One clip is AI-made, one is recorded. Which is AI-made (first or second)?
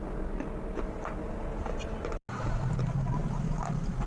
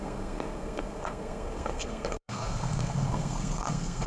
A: second